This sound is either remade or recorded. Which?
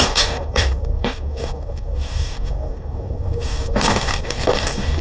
remade